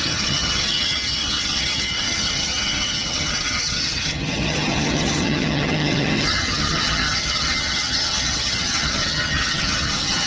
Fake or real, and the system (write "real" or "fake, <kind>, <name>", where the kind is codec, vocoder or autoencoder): fake, vocoder, HiFi-GAN